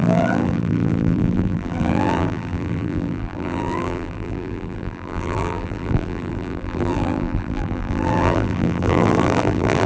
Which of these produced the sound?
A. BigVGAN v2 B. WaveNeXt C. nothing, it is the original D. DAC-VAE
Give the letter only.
A